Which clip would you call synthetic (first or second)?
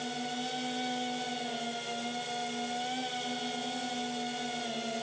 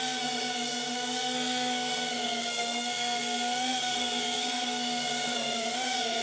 second